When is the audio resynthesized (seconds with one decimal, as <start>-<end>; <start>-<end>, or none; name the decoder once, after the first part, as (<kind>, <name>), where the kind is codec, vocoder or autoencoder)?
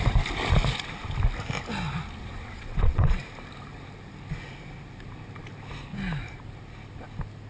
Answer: 2.2-3.2 (vocoder, WaveNeXt)